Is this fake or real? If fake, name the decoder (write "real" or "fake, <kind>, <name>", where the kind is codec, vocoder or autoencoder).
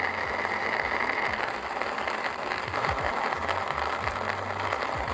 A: real